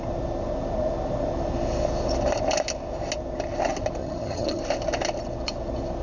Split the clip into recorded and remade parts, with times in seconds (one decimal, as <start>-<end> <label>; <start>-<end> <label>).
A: 0.0-4.0 recorded; 4.0-4.6 remade; 4.6-6.0 recorded